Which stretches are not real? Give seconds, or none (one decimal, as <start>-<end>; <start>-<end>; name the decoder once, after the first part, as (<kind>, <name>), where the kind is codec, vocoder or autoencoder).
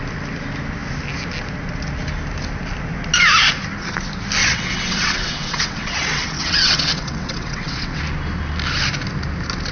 4.4-8.0 (vocoder, WaveNeXt)